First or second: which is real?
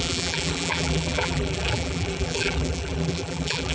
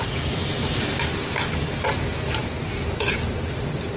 second